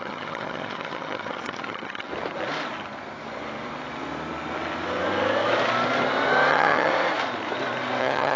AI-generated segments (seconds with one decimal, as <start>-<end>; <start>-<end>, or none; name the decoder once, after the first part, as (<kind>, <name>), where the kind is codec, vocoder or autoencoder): 0.0-2.1 (vocoder, HiFi-GAN); 6.5-6.9; 8.0-8.4